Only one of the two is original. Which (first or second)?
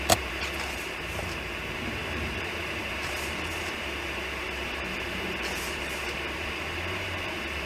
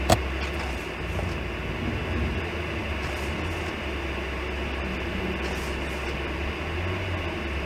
second